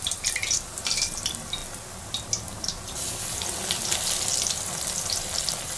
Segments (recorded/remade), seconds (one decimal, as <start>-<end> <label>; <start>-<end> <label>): 0.0-1.6 remade; 1.6-2.6 recorded; 2.6-5.8 remade